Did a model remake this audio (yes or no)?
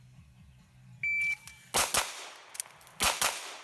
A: no